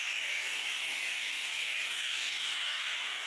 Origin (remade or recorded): remade